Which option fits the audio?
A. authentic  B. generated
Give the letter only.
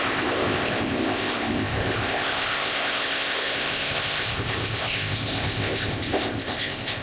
B